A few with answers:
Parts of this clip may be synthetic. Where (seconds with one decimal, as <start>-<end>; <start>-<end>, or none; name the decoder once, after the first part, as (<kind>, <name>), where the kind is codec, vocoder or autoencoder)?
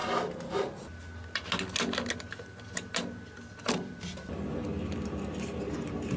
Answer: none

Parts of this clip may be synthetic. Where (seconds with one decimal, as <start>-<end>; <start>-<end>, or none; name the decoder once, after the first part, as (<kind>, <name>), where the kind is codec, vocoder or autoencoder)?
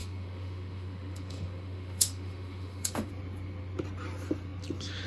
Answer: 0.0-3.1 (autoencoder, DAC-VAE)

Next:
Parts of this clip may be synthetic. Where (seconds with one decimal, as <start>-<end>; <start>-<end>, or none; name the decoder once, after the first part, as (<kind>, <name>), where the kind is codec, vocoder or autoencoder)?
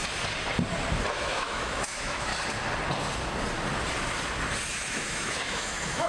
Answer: 1.1-2.3 (autoencoder, DAC-VAE); 4.7-6.1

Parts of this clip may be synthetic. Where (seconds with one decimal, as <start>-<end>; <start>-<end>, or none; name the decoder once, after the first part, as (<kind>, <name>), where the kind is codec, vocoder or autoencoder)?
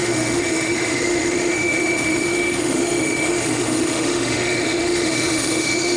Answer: 0.0-6.0 (autoencoder, DAC-VAE)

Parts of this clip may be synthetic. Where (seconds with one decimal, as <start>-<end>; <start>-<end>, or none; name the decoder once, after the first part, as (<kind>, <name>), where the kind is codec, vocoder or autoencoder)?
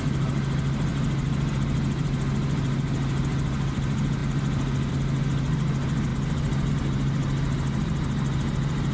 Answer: none